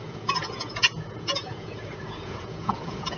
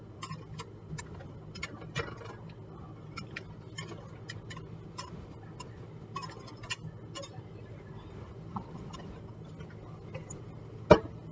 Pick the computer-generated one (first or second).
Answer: first